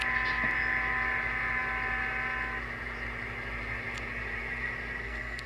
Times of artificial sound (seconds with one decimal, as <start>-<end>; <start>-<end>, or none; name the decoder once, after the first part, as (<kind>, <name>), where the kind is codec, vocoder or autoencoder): 5.0-5.5 (codec, SNAC)